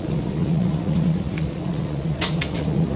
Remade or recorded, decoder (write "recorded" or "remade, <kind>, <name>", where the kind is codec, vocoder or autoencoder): remade, vocoder, Vocos